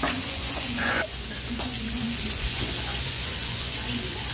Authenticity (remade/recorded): remade